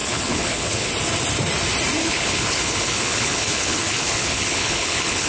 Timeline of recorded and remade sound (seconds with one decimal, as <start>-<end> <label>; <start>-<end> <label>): 0.0-0.9 remade; 0.9-2.0 recorded; 2.0-5.3 remade